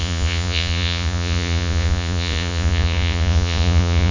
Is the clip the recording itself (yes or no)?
no